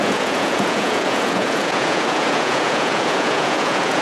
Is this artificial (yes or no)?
yes